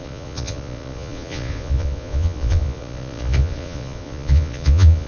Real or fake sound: fake